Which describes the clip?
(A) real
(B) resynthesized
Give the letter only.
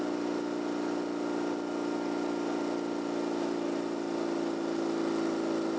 A